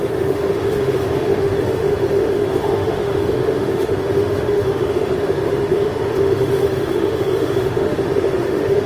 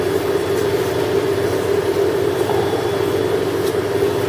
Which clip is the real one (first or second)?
second